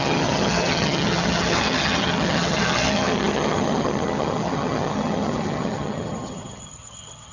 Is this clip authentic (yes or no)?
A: no